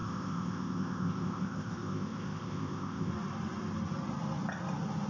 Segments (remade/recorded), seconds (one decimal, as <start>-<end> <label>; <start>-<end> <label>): 0.0-3.1 remade; 3.1-5.1 recorded